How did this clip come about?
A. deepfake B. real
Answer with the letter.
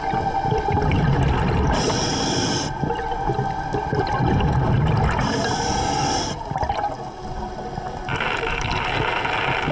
B